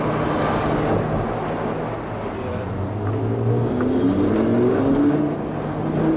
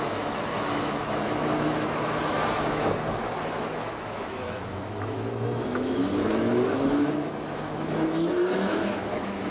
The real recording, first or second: first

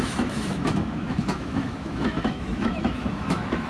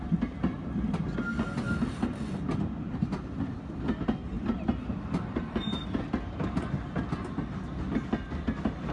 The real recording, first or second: second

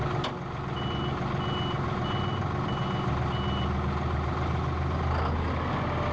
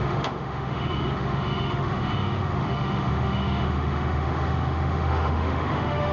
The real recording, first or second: first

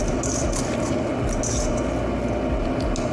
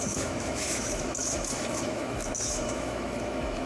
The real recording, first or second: first